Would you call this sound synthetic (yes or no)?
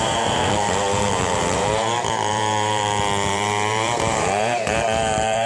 yes